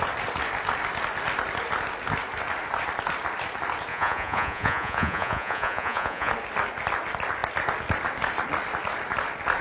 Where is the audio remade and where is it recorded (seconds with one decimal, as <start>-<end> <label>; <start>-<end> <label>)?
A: 0.0-3.9 recorded; 3.9-6.3 remade; 6.3-9.6 recorded